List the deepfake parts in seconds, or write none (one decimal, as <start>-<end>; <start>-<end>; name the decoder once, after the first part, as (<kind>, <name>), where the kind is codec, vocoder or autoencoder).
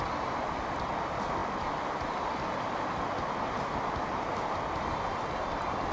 none